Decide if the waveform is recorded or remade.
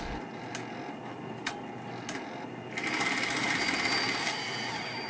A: recorded